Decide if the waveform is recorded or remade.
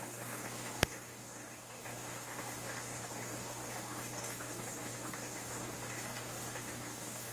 remade